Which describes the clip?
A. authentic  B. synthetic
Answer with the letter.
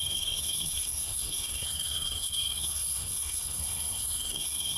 B